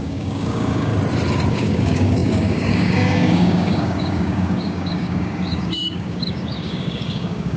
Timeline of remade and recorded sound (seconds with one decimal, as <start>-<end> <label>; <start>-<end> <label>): 0.0-0.9 remade; 0.9-1.5 recorded; 1.5-7.6 remade